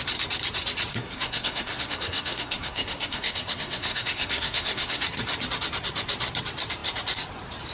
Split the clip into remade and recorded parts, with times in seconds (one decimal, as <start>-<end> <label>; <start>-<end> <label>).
0.0-0.9 recorded; 0.9-5.0 remade; 5.0-7.7 recorded